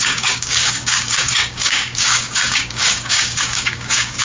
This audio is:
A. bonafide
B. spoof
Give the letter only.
B